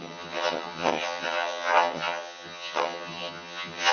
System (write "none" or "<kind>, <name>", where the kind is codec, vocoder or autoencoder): vocoder, HiFi-GAN